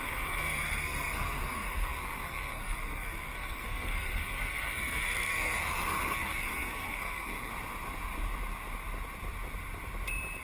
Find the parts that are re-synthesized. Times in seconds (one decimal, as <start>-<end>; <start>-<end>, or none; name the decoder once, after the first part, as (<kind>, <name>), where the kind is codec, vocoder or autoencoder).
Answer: 0.0-7.5 (codec, SNAC)